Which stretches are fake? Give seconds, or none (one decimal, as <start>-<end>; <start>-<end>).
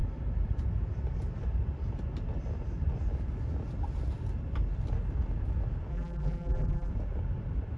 5.9-6.9